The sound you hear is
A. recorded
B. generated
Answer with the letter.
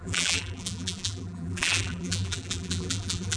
B